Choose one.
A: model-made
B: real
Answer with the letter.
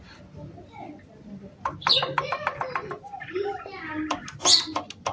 B